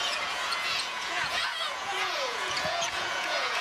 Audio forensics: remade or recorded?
remade